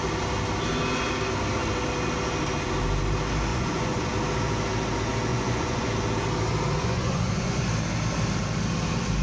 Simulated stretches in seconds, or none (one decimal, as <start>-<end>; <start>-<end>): 3.5-4.1; 5.3-5.9; 6.8-7.7